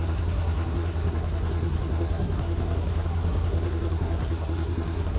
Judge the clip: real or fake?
fake